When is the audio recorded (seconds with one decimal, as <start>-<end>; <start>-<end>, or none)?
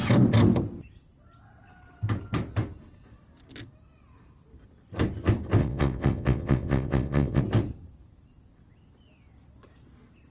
0.0-5.6; 7.4-10.3